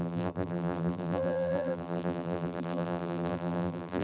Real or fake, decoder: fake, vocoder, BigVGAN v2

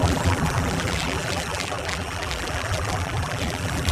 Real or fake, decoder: fake, vocoder, BigVGAN v2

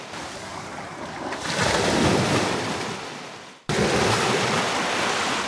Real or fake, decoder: fake, vocoder, BigVGAN v2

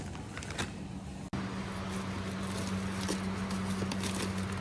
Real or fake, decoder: real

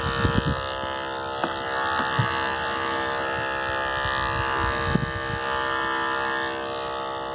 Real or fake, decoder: real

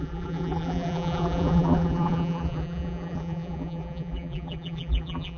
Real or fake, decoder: fake, vocoder, BigVGAN v2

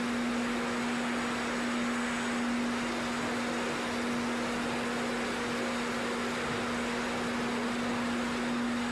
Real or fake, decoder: real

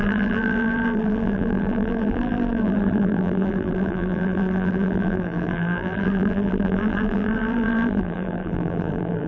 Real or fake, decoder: fake, vocoder, BigVGAN v2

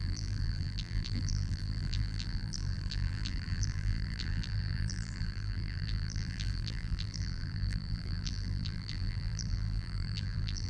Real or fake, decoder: fake, vocoder, BigVGAN v2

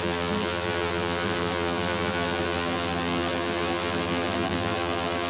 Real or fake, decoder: fake, vocoder, BigVGAN v2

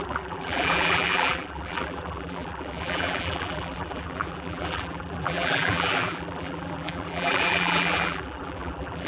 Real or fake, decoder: fake, vocoder, BigVGAN v2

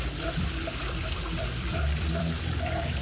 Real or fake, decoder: fake, vocoder, BigVGAN v2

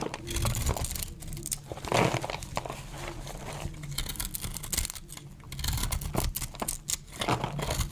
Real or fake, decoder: real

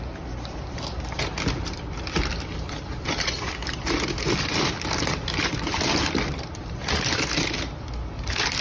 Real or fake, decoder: fake, vocoder, BigVGAN v2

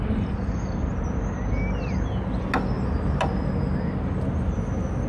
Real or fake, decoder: real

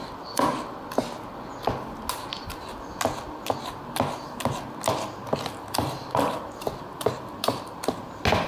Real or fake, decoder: real